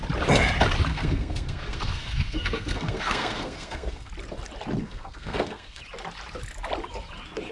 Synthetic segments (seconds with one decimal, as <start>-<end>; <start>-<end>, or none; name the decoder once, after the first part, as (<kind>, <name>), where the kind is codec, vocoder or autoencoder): 0.9-4.1 (codec, SNAC); 4.8-5.8

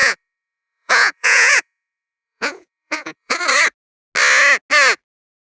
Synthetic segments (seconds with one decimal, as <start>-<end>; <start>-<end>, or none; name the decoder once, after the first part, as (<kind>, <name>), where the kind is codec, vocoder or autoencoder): 0.0-3.4 (vocoder, Vocos)